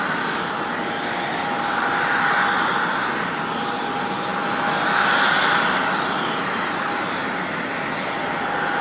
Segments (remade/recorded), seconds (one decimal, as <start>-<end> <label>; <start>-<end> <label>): 0.0-8.8 recorded